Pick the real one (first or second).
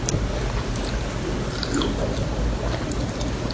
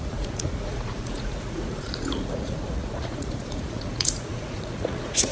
first